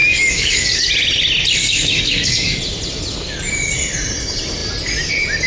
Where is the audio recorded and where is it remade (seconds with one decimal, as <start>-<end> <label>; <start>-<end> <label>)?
0.0-0.9 remade; 0.9-1.6 recorded; 1.6-2.6 remade; 2.6-5.5 recorded